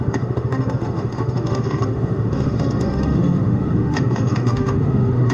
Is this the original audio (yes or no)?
no